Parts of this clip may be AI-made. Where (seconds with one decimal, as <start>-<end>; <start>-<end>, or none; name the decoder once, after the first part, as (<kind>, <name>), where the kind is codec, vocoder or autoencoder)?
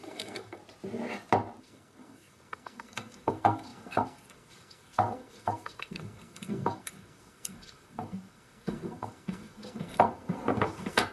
0.0-0.6 (codec, SNAC); 1.6-11.1